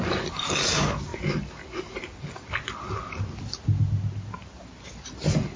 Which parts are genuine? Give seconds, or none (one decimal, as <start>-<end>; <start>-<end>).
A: 0.0-5.6